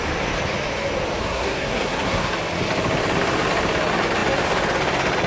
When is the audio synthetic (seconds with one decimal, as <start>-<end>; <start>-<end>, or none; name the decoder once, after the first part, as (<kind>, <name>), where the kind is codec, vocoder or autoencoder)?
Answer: 1.2-2.3 (codec, SNAC)